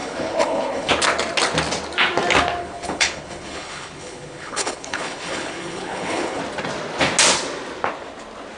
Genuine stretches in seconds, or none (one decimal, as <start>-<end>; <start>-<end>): 0.9-2.6; 6.4-8.6